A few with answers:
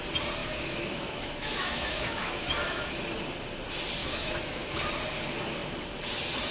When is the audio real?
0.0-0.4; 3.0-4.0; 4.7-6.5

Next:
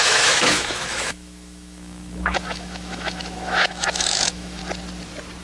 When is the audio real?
4.6-5.4

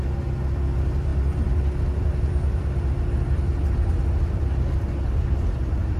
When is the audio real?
0.0-6.0

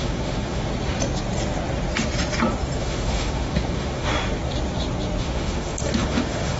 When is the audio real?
0.7-2.8; 4.1-5.2

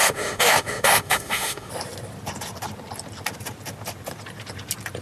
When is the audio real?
1.7-5.0

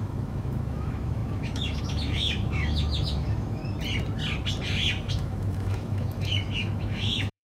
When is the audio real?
3.6-5.1

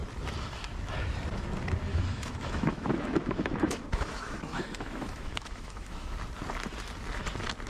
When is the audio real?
0.0-1.9; 6.1-7.7

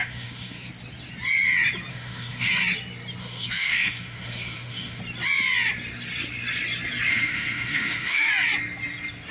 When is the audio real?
0.7-1.9; 2.5-3.2; 5.0-7.1; 8.3-9.3